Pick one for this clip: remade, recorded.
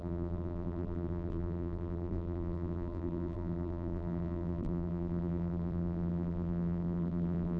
remade